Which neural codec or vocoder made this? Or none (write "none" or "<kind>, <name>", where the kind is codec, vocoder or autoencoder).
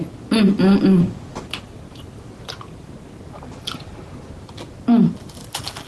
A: none